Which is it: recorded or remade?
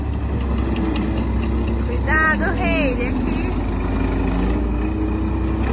recorded